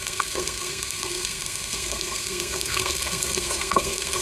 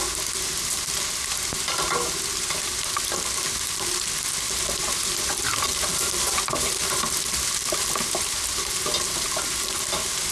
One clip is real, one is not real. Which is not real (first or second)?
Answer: first